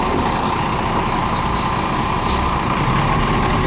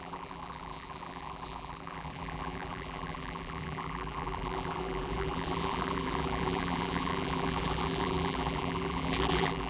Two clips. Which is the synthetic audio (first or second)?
second